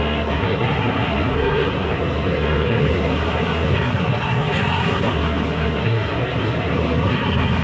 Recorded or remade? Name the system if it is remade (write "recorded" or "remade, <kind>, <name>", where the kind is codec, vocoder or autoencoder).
remade, codec, SNAC